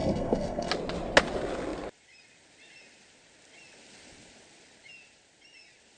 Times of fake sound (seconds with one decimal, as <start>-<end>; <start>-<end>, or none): 0.0-0.7